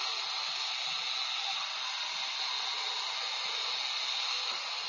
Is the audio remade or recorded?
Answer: recorded